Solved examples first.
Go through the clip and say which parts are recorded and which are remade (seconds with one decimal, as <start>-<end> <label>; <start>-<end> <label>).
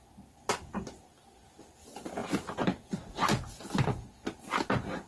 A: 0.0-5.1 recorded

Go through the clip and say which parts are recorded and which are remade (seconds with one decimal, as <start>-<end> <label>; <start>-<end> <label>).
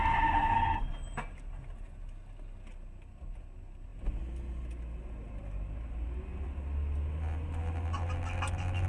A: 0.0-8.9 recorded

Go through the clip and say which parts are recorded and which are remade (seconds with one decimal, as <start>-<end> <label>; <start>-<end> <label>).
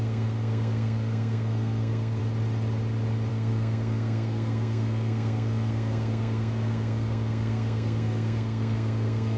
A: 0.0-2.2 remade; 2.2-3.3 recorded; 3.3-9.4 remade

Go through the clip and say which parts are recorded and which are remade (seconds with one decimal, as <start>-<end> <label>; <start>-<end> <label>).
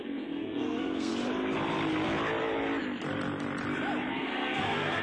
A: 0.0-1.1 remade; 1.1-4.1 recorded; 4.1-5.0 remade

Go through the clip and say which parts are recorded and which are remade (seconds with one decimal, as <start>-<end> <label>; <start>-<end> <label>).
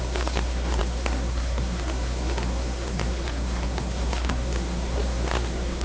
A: 0.0-5.8 remade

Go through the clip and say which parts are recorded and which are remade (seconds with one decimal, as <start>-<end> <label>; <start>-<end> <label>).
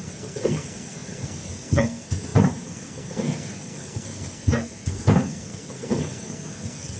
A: 0.0-7.0 remade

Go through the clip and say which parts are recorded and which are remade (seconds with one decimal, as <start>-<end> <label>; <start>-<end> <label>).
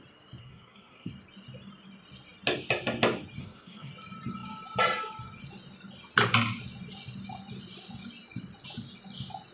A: 0.0-0.4 recorded; 0.4-1.1 remade; 1.1-3.4 recorded; 3.4-3.9 remade; 3.9-9.5 recorded